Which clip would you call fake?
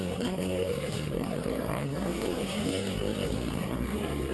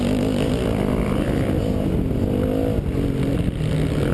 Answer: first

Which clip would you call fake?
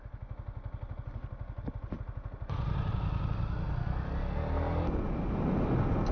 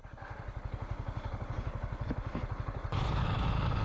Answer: second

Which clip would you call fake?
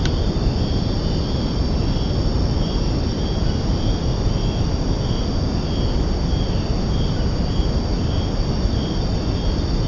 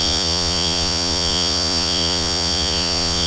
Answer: second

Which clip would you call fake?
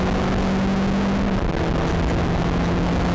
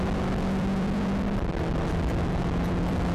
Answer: second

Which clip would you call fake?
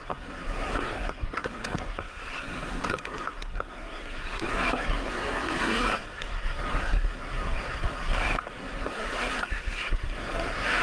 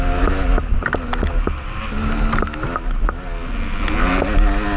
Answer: first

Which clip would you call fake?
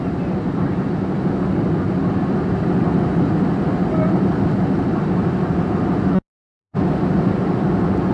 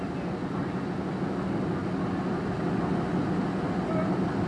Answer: first